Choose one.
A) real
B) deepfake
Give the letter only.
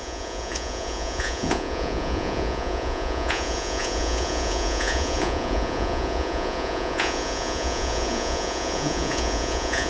B